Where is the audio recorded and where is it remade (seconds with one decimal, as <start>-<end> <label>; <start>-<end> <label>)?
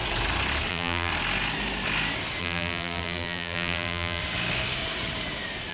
0.0-0.7 recorded; 0.7-1.1 remade; 1.1-2.4 recorded; 2.4-4.2 remade; 4.2-5.7 recorded